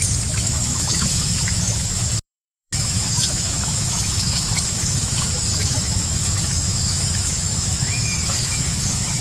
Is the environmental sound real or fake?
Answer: fake